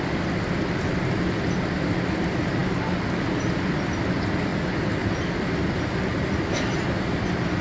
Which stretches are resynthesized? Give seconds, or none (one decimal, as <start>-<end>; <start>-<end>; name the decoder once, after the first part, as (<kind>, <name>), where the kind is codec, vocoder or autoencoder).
none